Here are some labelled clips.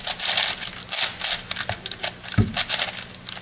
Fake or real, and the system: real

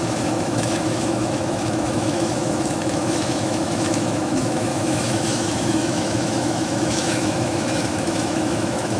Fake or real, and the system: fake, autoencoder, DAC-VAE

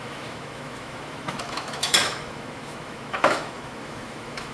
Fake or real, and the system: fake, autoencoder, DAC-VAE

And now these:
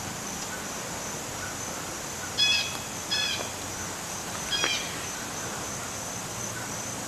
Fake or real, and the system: real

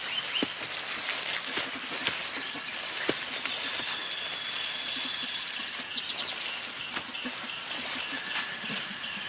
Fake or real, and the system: real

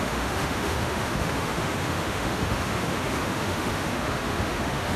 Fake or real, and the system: fake, autoencoder, DAC-VAE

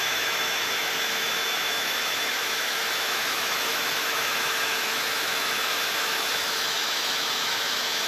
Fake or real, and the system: fake, autoencoder, DAC-VAE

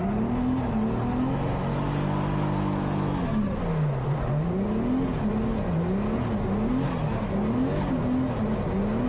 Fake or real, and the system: real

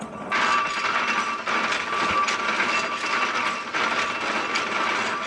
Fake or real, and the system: real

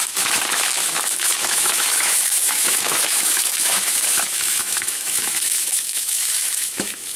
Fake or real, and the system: fake, autoencoder, DAC-VAE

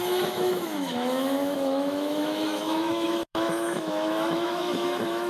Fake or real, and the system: fake, autoencoder, DAC-VAE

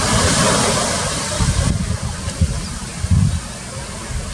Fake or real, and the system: real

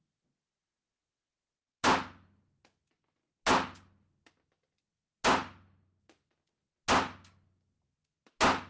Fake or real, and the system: real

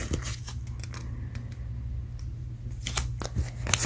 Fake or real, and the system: real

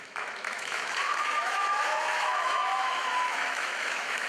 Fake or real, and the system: fake, autoencoder, DAC-VAE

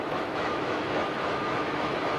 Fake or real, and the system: fake, autoencoder, DAC-VAE